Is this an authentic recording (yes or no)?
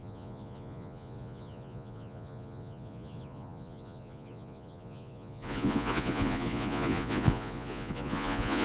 no